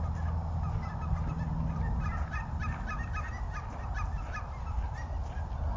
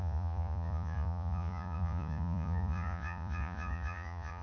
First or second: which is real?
first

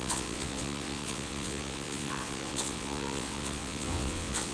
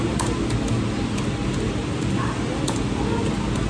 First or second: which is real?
second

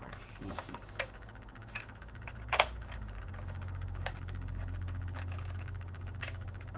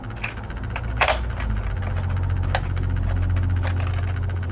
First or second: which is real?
second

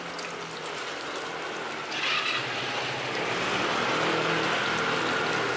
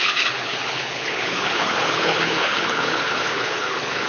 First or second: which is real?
first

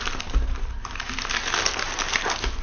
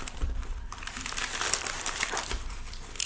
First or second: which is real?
first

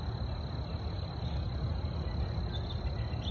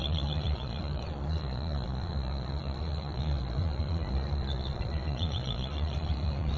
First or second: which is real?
first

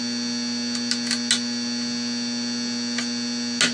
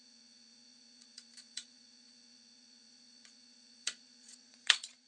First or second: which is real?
first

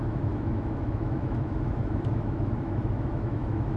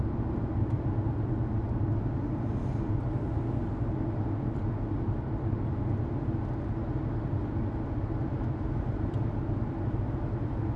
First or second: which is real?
second